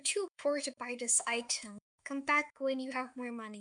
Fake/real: fake